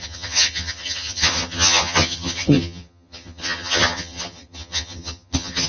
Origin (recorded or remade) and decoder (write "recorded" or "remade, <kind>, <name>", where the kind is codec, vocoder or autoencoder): remade, vocoder, HiFi-GAN